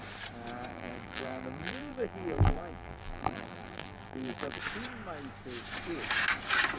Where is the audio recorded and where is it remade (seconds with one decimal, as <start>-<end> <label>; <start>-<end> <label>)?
0.0-0.7 recorded; 0.7-4.6 remade; 4.6-6.8 recorded